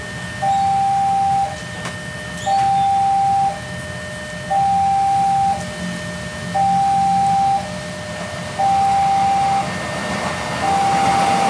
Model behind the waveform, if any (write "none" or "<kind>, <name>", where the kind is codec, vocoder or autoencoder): none